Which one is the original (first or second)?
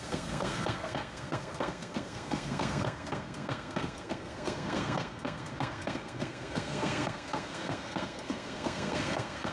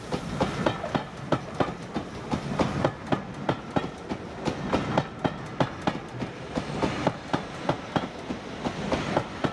second